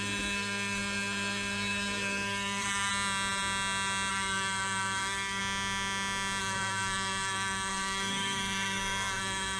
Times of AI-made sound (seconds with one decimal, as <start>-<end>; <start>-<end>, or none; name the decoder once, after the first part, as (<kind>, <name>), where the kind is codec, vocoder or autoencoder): 0.0-2.9 (codec, SNAC); 4.1-5.4; 6.4-9.6